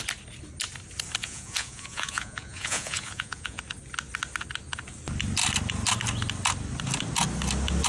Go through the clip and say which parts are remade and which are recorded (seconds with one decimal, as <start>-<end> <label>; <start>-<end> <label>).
0.0-1.2 recorded; 1.2-3.6 remade; 3.6-7.9 recorded